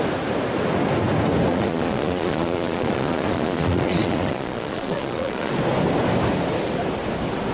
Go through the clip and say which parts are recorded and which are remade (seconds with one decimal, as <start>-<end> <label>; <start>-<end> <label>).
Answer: 0.0-1.5 recorded; 1.5-5.5 remade; 5.5-7.5 recorded